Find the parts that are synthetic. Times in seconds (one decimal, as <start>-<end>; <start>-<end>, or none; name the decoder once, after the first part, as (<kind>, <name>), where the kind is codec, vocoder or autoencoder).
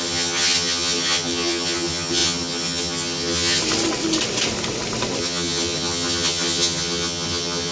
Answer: 0.0-3.6 (vocoder, HiFi-GAN); 5.2-7.7